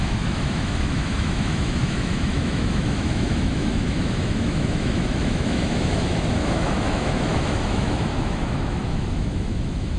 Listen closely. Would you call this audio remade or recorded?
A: remade